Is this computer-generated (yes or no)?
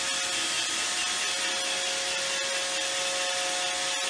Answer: no